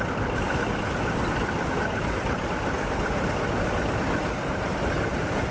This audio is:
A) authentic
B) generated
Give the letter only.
A